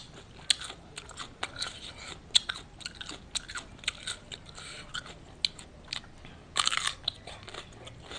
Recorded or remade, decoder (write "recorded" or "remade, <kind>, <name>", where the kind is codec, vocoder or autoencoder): recorded